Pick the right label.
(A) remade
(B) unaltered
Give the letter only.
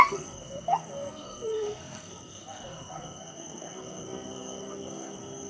A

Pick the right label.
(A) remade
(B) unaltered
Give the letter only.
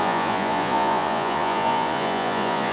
A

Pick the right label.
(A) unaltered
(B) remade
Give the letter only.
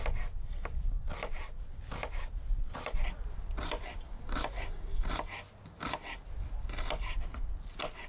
A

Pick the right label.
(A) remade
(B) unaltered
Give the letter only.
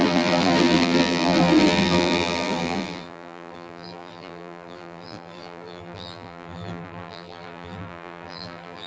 A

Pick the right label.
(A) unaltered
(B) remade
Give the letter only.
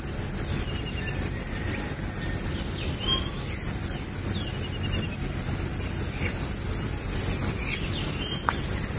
A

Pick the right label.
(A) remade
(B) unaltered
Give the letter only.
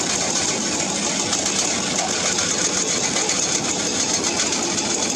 B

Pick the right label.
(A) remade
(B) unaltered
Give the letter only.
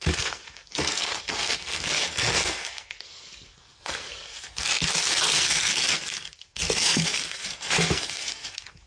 A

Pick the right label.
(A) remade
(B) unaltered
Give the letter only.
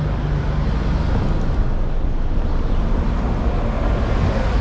B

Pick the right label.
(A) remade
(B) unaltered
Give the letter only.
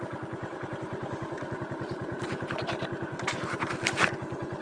B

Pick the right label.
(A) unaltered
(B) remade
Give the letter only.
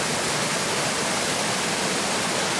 A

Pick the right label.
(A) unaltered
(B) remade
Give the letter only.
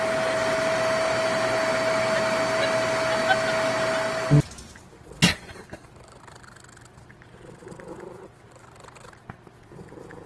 A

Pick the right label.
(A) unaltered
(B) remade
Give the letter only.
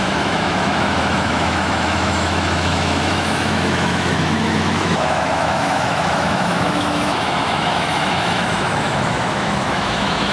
B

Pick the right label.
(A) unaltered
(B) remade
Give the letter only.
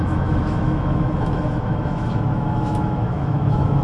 B